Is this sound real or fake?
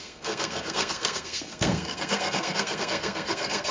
fake